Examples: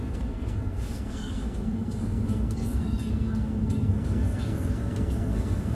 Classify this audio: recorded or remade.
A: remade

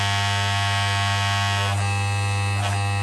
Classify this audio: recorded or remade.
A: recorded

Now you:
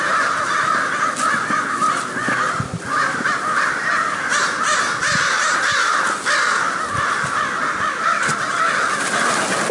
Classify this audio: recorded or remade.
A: recorded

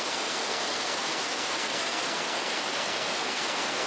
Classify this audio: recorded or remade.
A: remade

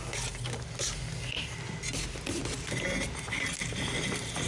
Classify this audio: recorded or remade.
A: recorded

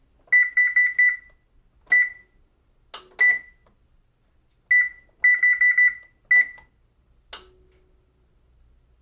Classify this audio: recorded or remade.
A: recorded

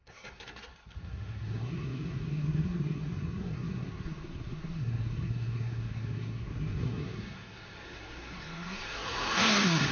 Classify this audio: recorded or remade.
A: remade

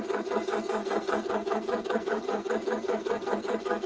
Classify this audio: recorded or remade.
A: remade